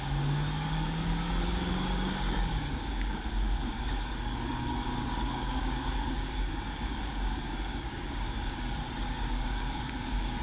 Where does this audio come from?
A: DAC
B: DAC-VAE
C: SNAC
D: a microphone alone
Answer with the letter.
A